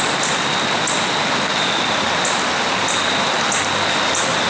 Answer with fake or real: real